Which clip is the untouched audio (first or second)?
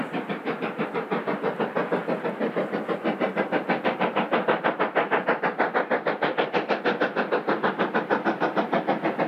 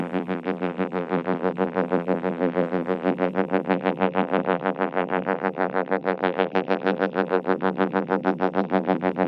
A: first